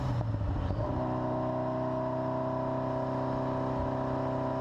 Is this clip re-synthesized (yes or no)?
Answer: no